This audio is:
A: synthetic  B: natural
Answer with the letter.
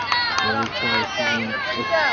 B